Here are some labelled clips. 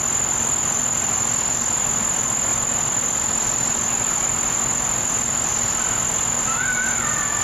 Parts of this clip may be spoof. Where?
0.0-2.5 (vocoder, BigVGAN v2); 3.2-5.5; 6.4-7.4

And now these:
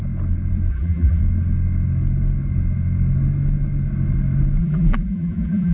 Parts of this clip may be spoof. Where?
0.7-1.2 (vocoder, BigVGAN v2); 4.6-5.7